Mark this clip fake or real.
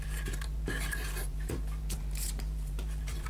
fake